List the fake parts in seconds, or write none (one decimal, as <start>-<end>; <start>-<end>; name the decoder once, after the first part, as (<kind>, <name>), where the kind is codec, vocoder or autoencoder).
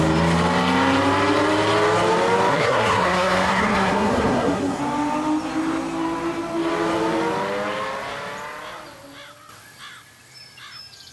2.5-4.8 (codec, SNAC)